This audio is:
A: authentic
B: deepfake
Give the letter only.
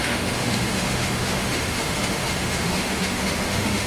B